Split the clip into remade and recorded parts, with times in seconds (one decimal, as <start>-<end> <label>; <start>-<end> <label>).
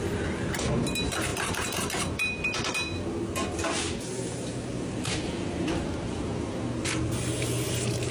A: 0.0-8.1 recorded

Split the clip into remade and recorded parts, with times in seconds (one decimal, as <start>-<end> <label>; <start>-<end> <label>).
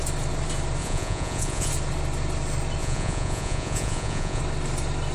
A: 0.0-0.8 recorded; 0.8-1.7 remade; 1.7-2.8 recorded; 2.8-4.4 remade; 4.4-5.1 recorded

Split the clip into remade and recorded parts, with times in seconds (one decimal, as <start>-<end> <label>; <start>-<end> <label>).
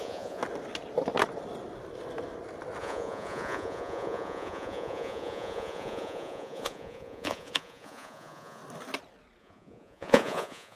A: 0.0-0.4 remade; 0.4-2.8 recorded; 2.8-8.6 remade; 8.6-9.4 recorded; 9.4-10.8 remade